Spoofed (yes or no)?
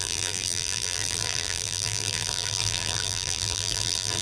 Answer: yes